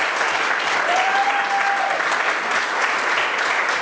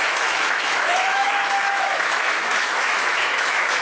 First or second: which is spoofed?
second